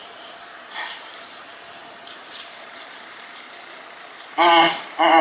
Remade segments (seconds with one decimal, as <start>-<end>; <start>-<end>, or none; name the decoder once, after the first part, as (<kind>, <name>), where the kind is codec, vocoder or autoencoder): 0.0-5.2 (vocoder, BigVGAN v2)